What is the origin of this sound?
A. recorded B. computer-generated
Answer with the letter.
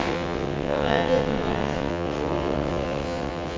B